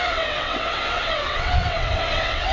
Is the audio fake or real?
fake